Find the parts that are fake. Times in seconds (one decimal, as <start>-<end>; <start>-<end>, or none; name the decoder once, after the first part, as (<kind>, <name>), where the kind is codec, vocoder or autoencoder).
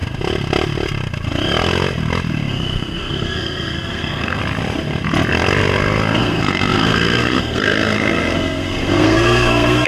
2.5-4.4 (codec, SNAC); 6.2-9.9